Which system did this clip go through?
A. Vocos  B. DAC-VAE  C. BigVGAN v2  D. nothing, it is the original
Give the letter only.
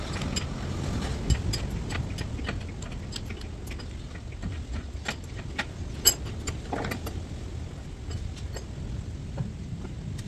D